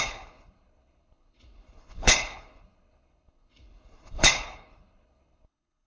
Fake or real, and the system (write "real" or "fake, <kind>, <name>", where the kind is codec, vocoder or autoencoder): fake, codec, HILCodec